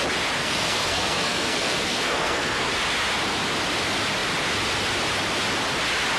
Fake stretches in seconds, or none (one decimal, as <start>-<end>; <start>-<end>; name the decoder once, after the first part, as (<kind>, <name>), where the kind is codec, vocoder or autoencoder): 0.4-2.7 (codec, SNAC)